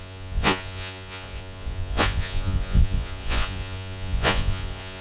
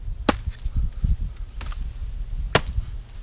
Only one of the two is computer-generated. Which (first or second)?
first